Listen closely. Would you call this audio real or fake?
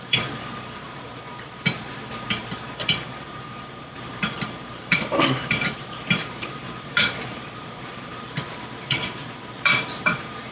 fake